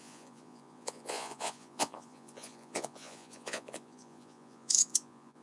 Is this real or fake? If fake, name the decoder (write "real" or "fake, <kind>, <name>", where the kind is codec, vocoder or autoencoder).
fake, vocoder, Vocos